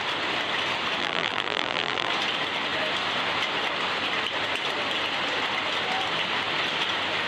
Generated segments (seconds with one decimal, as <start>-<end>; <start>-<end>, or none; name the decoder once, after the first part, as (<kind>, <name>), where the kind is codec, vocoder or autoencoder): 1.0-2.1 (vocoder, BigVGAN v2)